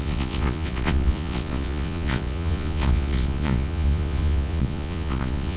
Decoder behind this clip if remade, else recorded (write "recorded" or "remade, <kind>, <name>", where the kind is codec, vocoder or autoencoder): remade, vocoder, Vocos